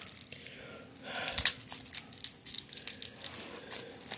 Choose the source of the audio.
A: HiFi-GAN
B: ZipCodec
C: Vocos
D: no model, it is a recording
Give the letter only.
D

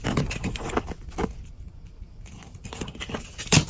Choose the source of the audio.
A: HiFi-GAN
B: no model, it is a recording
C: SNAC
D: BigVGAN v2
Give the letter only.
B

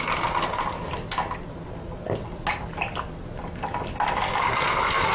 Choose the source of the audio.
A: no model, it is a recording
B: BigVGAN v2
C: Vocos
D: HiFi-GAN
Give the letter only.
A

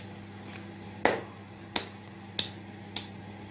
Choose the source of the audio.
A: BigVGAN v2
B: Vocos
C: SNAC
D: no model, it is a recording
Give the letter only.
D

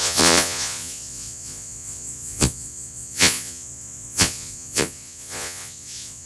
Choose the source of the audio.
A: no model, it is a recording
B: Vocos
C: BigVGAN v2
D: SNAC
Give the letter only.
B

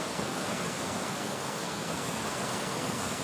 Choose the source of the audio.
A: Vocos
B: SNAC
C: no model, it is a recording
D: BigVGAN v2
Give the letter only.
B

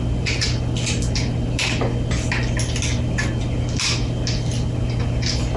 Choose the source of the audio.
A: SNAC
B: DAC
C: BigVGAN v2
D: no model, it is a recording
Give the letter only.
D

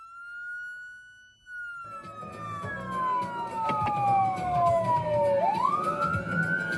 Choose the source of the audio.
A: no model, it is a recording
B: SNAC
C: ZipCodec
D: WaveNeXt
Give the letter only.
A